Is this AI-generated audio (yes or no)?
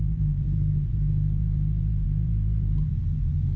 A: yes